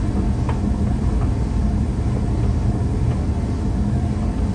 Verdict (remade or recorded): recorded